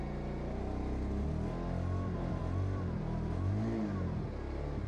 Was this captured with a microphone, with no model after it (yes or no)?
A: yes